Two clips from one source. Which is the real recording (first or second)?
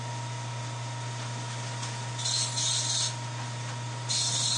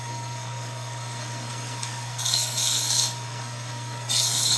first